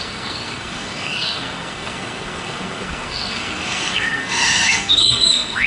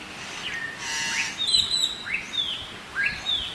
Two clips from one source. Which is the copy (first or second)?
first